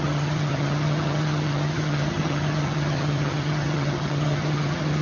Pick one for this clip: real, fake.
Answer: fake